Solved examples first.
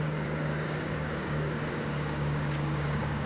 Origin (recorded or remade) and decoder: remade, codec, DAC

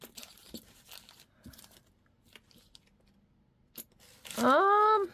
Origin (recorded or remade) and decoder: recorded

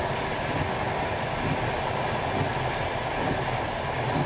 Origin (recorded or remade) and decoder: recorded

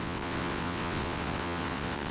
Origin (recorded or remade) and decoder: remade, vocoder, WaveNeXt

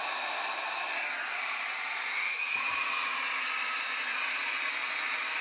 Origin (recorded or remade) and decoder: recorded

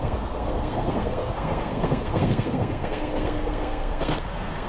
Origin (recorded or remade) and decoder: remade, codec, SNAC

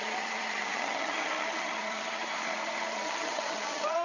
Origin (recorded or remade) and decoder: remade, vocoder, HiFi-GAN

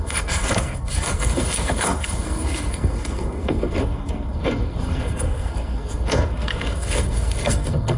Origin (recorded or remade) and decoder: remade, codec, SNAC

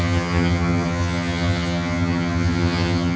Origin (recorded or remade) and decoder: remade, vocoder, HiFi-GAN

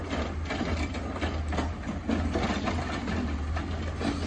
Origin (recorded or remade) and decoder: recorded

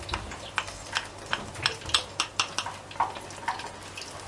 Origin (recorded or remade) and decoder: recorded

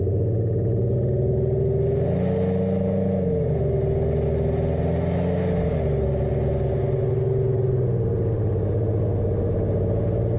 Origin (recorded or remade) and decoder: recorded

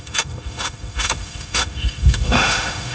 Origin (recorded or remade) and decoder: remade, autoencoder, DAC-VAE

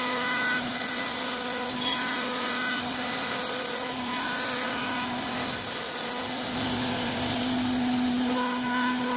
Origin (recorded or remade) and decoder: recorded